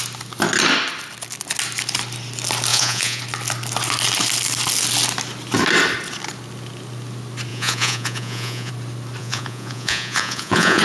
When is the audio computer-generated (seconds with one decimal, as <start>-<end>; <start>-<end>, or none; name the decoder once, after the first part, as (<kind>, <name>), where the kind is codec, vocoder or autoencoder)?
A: 2.7-3.2 (vocoder, Vocos); 7.5-8.7; 9.2-10.8